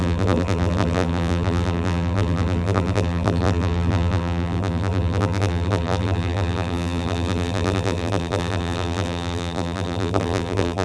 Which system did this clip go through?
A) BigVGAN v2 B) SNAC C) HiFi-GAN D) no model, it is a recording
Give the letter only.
A